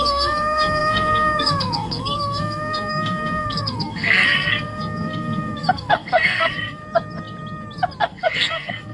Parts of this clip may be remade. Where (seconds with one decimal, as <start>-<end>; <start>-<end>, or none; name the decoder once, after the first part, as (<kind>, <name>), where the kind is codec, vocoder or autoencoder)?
0.0-6.8 (codec, SNAC); 8.0-8.9